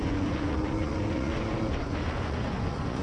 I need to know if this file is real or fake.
fake